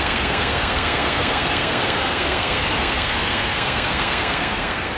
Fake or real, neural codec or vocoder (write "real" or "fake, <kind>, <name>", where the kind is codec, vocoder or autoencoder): fake, codec, SNAC